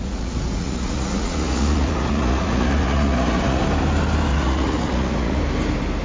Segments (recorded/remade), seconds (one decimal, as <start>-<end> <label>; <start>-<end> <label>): 0.0-3.6 remade; 3.6-4.3 recorded; 4.3-5.4 remade; 5.4-6.0 recorded